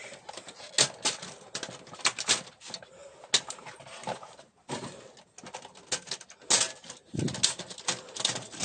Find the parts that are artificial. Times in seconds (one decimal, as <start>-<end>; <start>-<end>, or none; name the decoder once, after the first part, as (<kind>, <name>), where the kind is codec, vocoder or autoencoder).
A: 0.0-0.7 (vocoder, BigVGAN v2)